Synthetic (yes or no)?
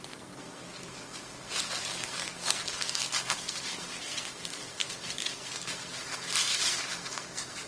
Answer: yes